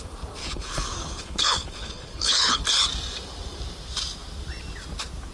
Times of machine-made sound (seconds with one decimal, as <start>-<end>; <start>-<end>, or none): 0.4-2.6